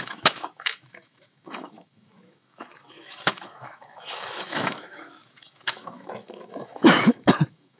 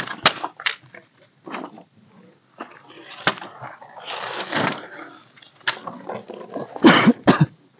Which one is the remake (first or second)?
first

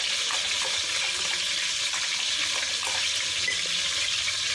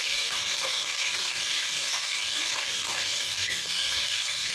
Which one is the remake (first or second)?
second